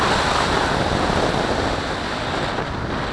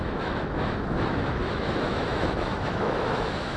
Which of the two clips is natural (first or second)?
first